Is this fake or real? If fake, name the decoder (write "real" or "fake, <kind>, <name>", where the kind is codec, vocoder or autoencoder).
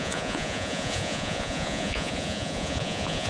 fake, vocoder, Vocos